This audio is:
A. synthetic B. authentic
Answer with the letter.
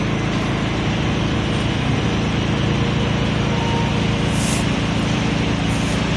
B